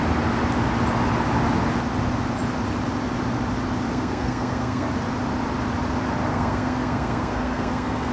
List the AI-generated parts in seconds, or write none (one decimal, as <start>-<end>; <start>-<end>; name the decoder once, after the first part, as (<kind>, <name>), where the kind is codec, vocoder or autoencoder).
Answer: 3.9-4.9 (codec, SNAC); 6.3-8.1